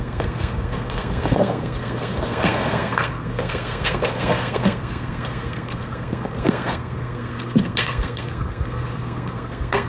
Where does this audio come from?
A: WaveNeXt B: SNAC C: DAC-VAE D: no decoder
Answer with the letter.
B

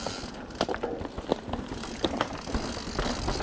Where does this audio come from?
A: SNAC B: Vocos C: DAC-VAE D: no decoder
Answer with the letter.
D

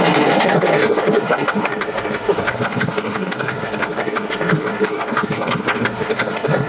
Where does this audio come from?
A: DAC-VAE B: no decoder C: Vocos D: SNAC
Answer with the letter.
D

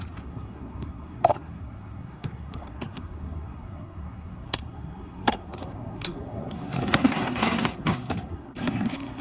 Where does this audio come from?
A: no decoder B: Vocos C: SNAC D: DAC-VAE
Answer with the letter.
C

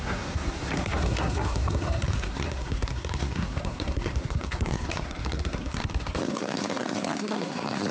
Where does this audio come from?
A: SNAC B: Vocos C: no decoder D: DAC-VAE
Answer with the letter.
A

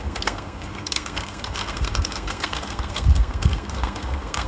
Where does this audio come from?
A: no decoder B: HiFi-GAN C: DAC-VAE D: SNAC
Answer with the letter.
D